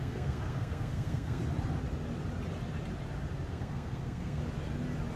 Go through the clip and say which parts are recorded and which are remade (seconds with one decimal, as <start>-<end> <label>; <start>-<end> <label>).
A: 0.0-1.4 remade; 1.4-3.5 recorded; 3.5-4.4 remade; 4.4-5.2 recorded